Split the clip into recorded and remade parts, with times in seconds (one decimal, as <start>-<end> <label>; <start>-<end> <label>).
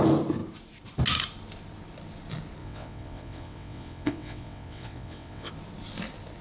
0.0-2.6 recorded; 2.6-5.5 remade; 5.5-6.4 recorded